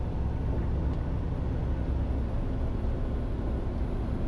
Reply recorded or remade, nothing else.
recorded